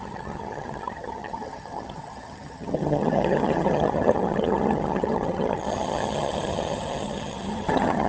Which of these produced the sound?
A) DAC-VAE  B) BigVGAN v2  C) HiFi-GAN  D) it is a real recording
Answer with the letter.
C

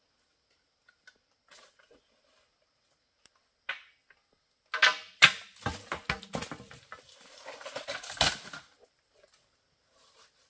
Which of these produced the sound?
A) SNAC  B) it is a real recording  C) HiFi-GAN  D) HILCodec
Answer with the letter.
B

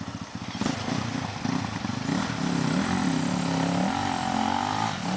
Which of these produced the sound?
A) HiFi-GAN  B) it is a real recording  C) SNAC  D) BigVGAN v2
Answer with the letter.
B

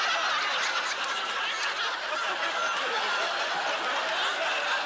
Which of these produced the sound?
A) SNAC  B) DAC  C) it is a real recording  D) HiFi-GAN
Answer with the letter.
C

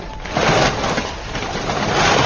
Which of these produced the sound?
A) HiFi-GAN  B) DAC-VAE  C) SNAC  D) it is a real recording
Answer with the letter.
D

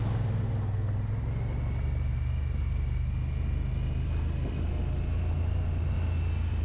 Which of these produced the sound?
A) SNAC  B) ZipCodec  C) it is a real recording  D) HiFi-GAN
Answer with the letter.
C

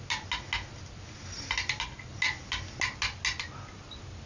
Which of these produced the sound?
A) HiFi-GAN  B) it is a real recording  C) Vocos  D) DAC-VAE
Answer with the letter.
B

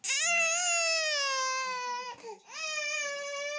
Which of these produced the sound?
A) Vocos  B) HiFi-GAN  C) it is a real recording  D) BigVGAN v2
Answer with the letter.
C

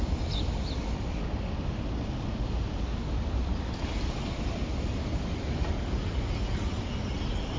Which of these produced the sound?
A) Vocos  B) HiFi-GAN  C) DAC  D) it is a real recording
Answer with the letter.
D